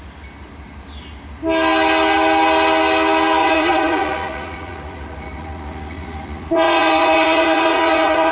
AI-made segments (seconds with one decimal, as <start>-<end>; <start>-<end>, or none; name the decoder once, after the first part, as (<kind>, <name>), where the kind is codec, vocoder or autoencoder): 3.4-8.3 (vocoder, Vocos)